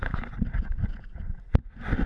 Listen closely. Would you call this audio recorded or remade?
recorded